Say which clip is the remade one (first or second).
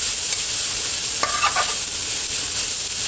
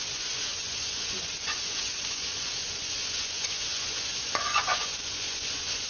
second